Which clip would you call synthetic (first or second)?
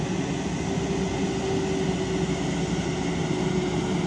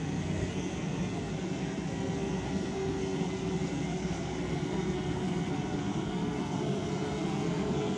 second